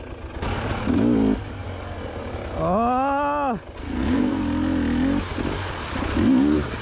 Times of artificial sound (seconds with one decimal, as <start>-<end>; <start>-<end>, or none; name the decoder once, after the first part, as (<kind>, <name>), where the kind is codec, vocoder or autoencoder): 3.8-4.4 (codec, SNAC)